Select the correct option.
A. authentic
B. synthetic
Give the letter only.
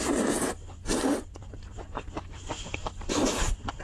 B